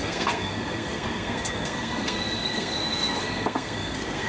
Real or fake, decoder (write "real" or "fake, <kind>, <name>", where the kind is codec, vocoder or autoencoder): fake, codec, SNAC